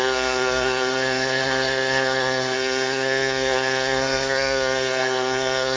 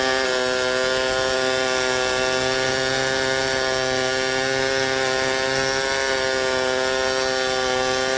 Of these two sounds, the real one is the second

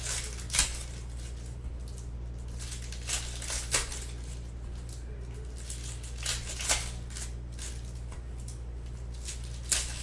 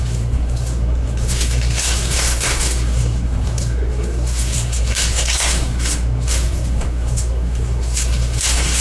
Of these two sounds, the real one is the first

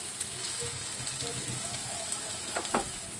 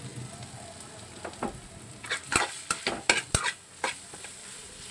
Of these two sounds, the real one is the second